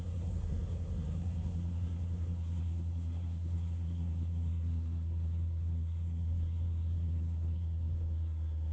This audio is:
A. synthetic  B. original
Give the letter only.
A